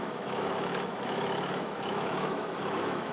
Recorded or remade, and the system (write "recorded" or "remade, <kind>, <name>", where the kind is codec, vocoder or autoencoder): remade, autoencoder, DAC-VAE